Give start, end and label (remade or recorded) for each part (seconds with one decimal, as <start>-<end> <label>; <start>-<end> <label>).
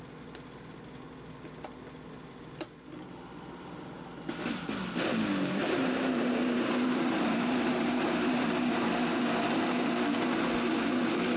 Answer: 0.0-5.6 recorded; 5.6-8.9 remade; 8.9-11.4 recorded